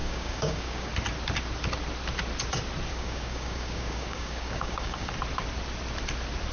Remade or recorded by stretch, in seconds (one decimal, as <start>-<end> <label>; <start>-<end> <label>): 0.0-0.9 remade; 0.9-2.9 recorded; 2.9-5.1 remade; 5.1-6.5 recorded